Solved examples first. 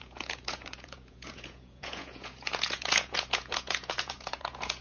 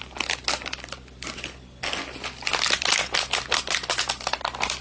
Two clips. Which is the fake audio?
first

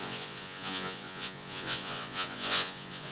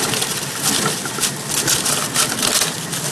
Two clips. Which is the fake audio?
first